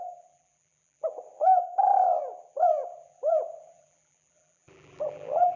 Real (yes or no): no